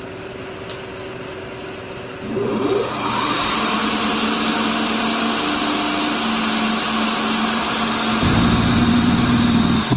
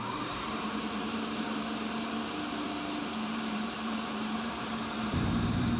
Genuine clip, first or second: first